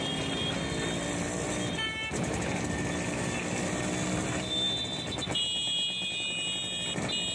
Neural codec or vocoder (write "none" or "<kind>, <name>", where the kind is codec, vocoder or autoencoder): none